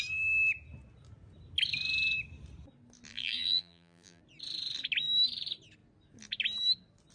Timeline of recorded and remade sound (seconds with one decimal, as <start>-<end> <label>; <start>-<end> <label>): 0.0-3.1 recorded; 3.1-4.2 remade; 4.2-7.1 recorded